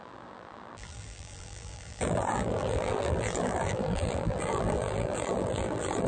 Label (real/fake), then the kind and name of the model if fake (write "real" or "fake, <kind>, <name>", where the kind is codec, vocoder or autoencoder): fake, vocoder, BigVGAN v2